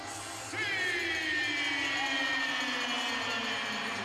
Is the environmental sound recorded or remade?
recorded